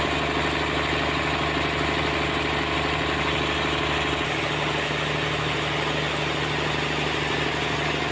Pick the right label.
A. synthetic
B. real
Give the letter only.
B